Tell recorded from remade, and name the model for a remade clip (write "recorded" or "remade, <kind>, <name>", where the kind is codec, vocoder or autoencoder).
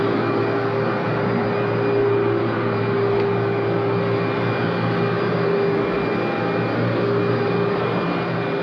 recorded